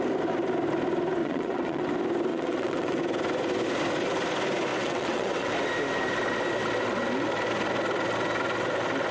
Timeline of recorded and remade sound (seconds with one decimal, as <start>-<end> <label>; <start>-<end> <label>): 0.0-1.2 recorded; 1.2-1.9 remade; 1.9-2.3 recorded; 2.3-3.0 remade; 3.0-4.7 recorded; 4.7-5.5 remade; 5.5-9.1 recorded